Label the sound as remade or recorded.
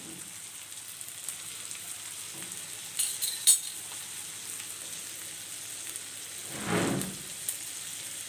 recorded